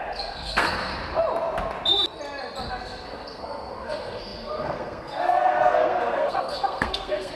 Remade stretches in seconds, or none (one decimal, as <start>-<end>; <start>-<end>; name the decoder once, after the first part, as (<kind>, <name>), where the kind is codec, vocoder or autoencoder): 0.0-0.9 (codec, SNAC); 2.7-7.4